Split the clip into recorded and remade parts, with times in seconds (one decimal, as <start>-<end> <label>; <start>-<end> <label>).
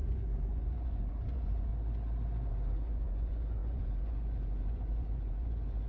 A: 0.0-1.7 remade; 1.7-2.5 recorded; 2.5-5.9 remade